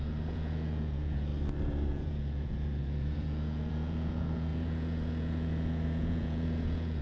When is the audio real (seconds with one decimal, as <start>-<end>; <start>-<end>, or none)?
1.3-1.9